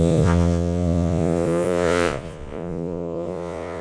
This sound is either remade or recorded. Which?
remade